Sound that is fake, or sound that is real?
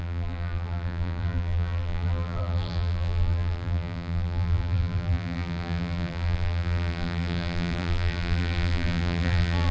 fake